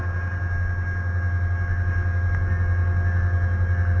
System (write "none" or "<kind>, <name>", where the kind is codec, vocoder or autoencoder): none